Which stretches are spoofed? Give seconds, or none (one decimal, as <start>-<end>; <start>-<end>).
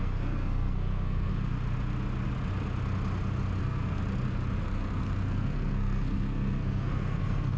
0.0-1.3; 3.6-4.0; 4.6-7.6